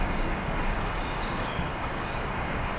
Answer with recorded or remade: remade